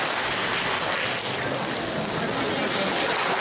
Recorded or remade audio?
recorded